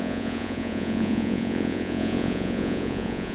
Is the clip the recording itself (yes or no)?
no